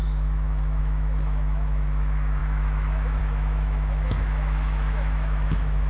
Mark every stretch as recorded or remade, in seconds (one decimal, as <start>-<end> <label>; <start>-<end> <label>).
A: 0.0-5.9 remade